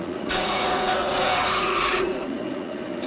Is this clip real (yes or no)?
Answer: no